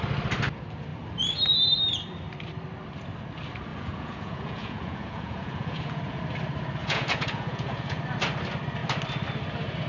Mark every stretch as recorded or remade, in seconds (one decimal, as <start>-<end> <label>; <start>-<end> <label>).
0.0-3.7 recorded; 3.7-6.2 remade; 6.2-6.8 recorded; 6.8-8.0 remade; 8.0-9.9 recorded